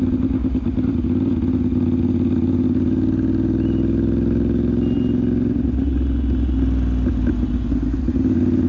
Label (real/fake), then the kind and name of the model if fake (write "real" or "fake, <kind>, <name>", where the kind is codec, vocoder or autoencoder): real